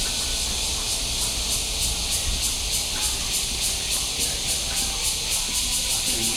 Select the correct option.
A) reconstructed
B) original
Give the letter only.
B